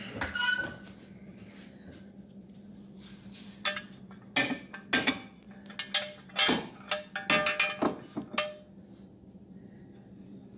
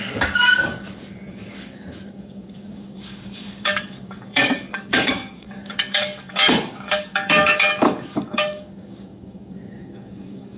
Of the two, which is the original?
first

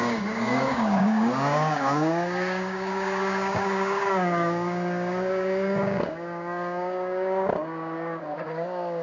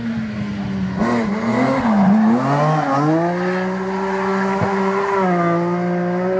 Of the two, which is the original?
second